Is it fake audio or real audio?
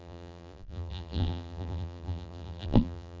fake